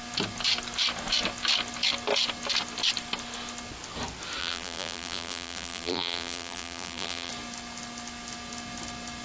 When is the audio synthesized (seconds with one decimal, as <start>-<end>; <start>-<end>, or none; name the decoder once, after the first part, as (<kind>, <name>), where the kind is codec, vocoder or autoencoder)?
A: 4.4-7.3 (vocoder, BigVGAN v2)